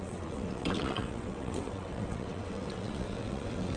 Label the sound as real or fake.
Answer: fake